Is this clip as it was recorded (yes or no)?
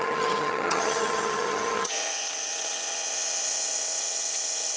no